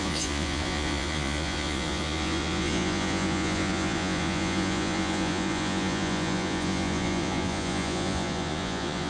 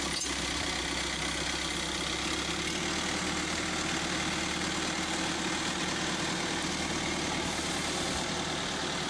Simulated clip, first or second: first